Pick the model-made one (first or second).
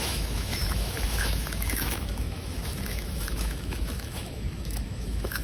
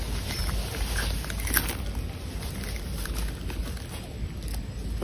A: first